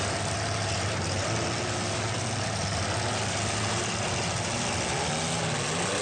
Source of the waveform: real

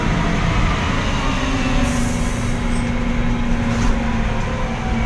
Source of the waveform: real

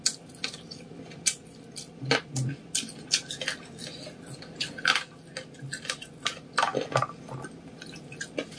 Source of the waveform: real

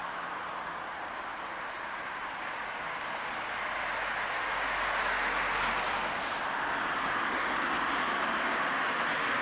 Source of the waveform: real